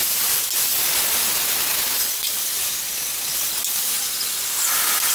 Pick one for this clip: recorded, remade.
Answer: recorded